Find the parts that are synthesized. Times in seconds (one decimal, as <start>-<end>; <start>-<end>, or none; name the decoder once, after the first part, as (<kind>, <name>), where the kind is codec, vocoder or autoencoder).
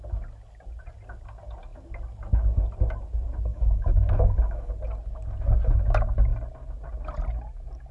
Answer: 3.5-4.7 (autoencoder, DAC-VAE)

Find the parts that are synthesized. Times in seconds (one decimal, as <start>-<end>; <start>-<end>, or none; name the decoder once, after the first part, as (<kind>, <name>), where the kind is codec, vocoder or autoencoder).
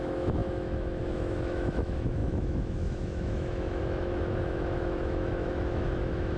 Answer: 0.0-6.4 (autoencoder, DAC-VAE)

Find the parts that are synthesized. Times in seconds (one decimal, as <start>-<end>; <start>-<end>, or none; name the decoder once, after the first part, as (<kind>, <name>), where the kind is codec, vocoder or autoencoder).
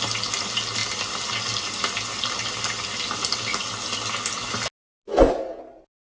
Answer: none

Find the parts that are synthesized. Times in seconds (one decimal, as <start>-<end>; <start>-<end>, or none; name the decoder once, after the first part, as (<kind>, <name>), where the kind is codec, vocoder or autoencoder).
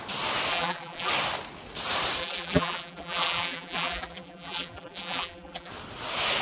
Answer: 0.5-1.1 (vocoder, BigVGAN v2); 2.2-5.7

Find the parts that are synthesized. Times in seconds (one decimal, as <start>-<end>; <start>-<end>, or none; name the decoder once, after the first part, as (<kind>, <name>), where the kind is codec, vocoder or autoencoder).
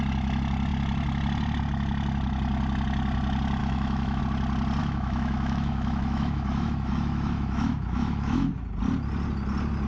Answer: 3.6-4.2 (autoencoder, DAC-VAE); 4.8-8.5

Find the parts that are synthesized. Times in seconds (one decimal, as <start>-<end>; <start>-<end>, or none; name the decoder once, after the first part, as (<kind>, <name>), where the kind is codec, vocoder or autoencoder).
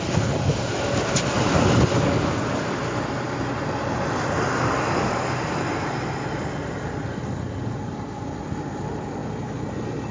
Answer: none